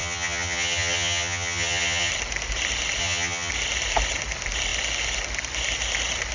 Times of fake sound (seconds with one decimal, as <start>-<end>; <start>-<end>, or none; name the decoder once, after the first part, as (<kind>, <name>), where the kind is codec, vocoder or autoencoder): 0.0-2.1 (vocoder, HiFi-GAN); 3.0-3.5